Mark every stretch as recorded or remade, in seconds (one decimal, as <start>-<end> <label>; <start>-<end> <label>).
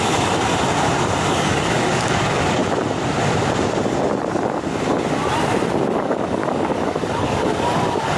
0.0-0.5 remade; 0.5-1.3 recorded; 1.3-2.6 remade; 2.6-5.9 recorded; 5.9-8.2 remade